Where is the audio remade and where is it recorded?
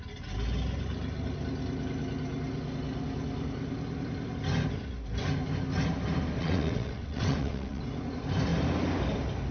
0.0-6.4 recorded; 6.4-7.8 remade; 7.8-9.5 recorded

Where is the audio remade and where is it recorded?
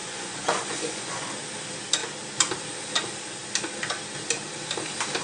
0.0-1.3 remade; 1.3-5.2 recorded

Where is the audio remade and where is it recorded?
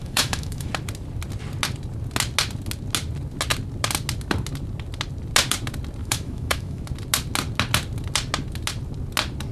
0.0-0.7 remade; 0.7-6.0 recorded; 6.0-6.8 remade; 6.8-9.5 recorded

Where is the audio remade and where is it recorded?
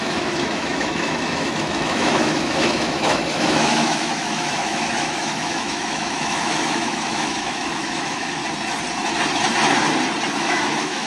0.0-8.4 remade; 8.4-10.4 recorded; 10.4-11.1 remade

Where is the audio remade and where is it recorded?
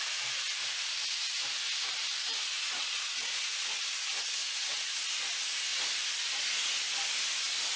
0.0-2.3 recorded; 2.3-3.7 remade; 3.7-4.4 recorded; 4.4-5.0 remade; 5.0-7.8 recorded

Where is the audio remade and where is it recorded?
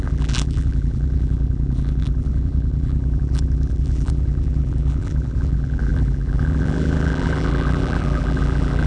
0.0-8.9 remade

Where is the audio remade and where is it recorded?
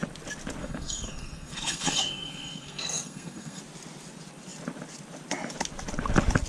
0.0-0.6 recorded; 0.6-3.6 remade; 3.6-6.5 recorded